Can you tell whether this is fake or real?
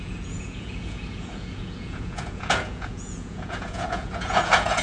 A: fake